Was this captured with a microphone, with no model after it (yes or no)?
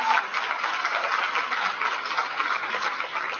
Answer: yes